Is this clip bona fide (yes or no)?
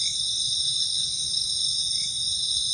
yes